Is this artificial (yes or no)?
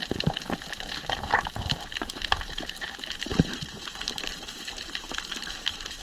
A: yes